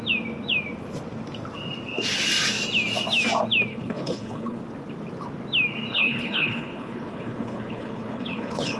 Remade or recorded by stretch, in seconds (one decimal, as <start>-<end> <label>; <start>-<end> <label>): 0.0-3.7 recorded; 3.7-4.6 remade; 4.6-5.9 recorded; 5.9-8.8 remade